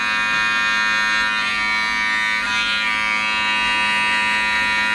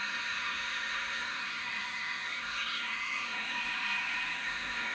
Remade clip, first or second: second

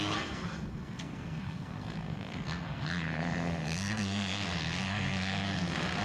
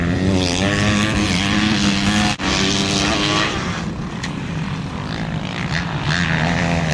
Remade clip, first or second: first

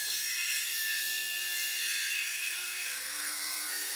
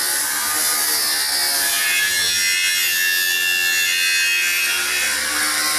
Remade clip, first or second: first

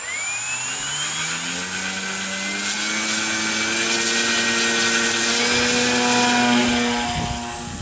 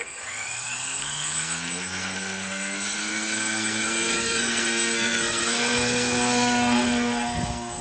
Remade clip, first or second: second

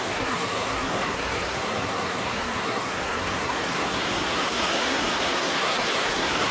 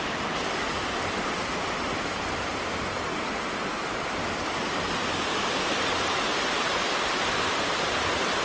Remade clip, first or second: first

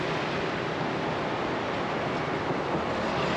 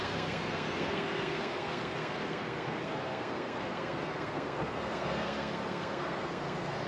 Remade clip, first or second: second